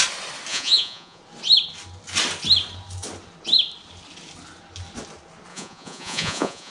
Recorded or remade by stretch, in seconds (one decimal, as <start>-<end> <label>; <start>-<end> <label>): 0.0-0.5 recorded; 0.5-1.2 remade; 1.2-5.5 recorded; 5.5-6.7 remade